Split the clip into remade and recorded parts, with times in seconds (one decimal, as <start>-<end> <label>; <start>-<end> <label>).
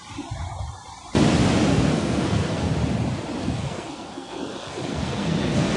0.0-1.7 recorded; 1.7-2.7 remade; 2.7-3.4 recorded; 3.4-5.8 remade